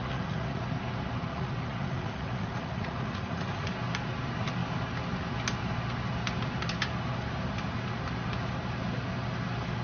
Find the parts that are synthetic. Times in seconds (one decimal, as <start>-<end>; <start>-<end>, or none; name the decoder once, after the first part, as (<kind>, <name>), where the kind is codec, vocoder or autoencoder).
0.0-0.6 (vocoder, Vocos); 1.3-3.7